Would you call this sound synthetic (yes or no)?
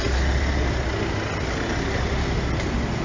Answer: no